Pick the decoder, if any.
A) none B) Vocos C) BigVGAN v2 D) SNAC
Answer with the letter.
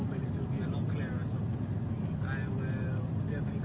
A